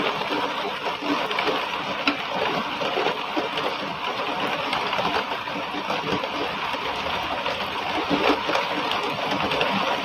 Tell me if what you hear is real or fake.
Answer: real